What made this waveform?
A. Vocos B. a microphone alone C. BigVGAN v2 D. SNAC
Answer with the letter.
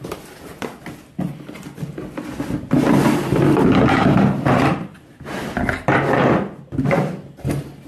B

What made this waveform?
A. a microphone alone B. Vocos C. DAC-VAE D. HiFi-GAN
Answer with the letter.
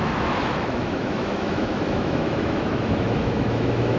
C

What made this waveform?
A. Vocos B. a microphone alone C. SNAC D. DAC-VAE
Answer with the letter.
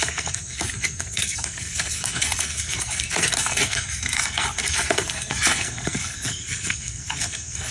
C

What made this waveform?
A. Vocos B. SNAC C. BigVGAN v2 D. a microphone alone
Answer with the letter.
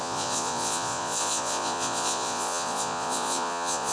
A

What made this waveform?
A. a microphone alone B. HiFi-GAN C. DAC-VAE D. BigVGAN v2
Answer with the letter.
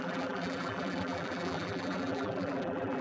D